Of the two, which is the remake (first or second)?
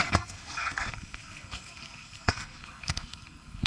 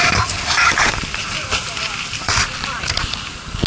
first